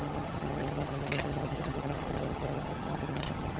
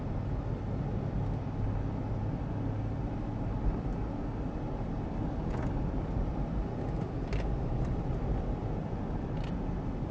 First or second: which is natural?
second